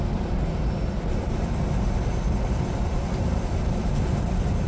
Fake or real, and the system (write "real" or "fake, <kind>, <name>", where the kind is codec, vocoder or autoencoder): fake, vocoder, BigVGAN v2